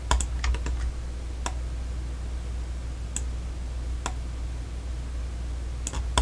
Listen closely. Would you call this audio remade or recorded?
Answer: recorded